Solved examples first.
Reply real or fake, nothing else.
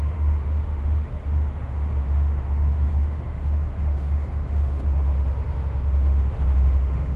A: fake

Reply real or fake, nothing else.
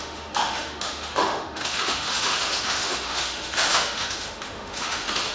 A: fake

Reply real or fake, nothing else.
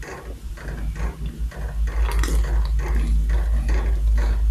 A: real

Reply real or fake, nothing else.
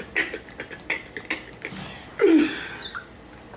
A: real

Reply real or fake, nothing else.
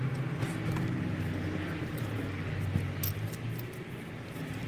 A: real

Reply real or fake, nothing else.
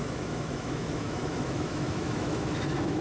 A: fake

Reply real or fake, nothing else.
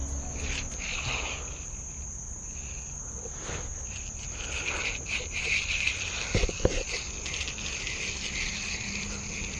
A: real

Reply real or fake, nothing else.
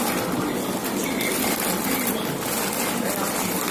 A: real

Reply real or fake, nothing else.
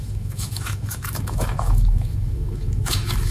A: fake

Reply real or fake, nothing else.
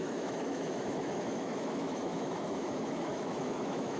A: fake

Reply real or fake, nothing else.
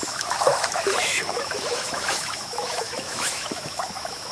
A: fake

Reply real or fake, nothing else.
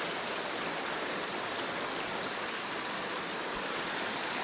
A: real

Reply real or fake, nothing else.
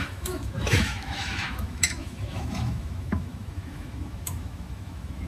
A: fake